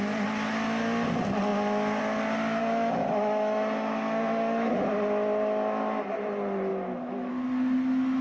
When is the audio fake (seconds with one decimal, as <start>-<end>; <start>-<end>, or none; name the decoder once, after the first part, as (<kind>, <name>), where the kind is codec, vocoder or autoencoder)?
2.6-4.7 (autoencoder, DAC-VAE); 6.7-7.3